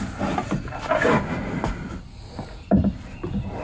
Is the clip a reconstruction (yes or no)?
no